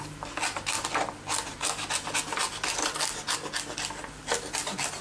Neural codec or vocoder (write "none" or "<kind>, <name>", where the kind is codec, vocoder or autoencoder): none